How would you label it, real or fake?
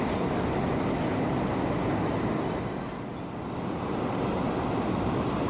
real